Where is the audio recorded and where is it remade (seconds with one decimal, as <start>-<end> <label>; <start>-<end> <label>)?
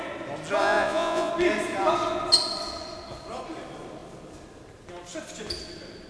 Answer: 0.0-0.6 recorded; 0.6-1.3 remade; 1.3-6.1 recorded